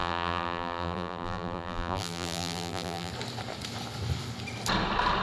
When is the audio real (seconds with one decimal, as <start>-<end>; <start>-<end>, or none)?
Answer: 3.1-5.2